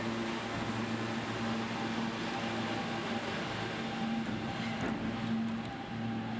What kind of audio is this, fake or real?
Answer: real